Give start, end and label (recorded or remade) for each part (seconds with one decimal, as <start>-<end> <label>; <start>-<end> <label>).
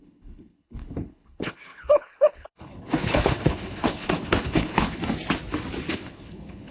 0.0-5.0 remade; 5.0-5.9 recorded; 5.9-6.7 remade